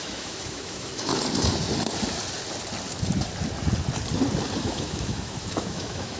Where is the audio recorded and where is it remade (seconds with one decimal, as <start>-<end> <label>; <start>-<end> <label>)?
0.0-1.1 remade; 1.1-4.6 recorded; 4.6-6.2 remade